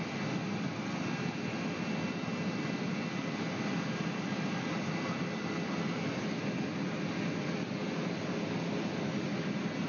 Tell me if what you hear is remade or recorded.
recorded